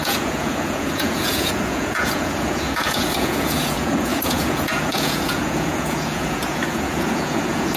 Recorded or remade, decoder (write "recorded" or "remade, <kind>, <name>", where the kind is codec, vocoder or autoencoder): remade, vocoder, Vocos